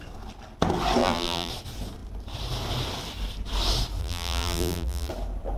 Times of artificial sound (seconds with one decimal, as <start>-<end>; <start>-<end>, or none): 1.0-1.5; 4.0-5.1